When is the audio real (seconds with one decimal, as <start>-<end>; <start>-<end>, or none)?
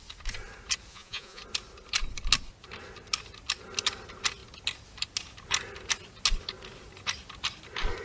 0.0-0.9; 1.4-8.0